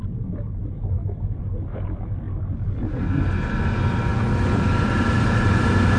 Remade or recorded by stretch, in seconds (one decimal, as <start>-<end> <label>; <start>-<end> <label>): 0.0-6.0 recorded